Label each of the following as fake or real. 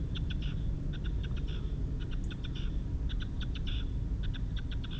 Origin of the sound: real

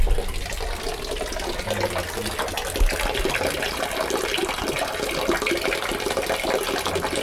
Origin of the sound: real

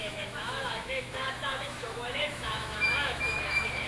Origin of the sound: fake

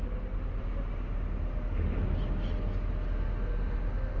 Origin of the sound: real